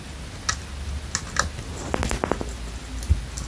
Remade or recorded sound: recorded